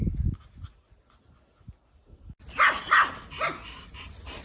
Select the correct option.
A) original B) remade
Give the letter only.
A